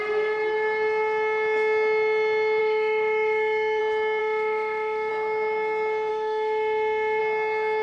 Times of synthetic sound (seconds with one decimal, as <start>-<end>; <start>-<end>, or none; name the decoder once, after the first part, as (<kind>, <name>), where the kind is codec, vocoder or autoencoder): 2.6-3.8 (autoencoder, DAC-VAE); 4.2-5.1; 6.1-7.2